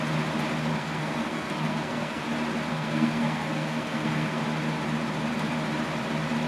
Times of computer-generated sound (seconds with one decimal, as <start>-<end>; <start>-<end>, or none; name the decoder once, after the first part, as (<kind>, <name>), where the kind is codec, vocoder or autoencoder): 0.7-2.2 (codec, SNAC); 2.7-4.4